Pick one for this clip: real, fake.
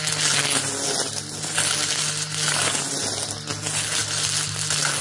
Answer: real